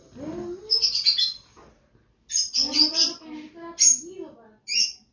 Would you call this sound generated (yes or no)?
no